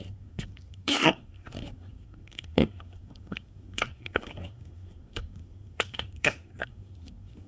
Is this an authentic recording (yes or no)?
no